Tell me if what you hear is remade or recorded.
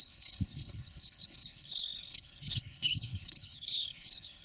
remade